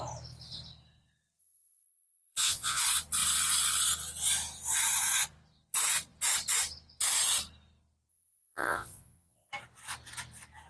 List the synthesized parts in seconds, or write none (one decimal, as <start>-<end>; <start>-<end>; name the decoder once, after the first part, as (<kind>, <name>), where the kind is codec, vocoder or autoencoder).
1.4-2.8 (vocoder, Vocos); 8.1-9.5